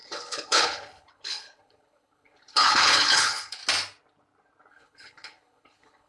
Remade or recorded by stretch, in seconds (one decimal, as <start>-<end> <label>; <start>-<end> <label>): 0.0-3.6 remade; 3.6-4.7 recorded; 4.7-6.1 remade